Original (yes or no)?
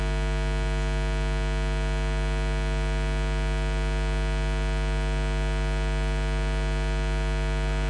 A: yes